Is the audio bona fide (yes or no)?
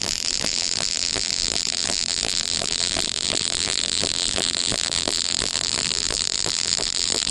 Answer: no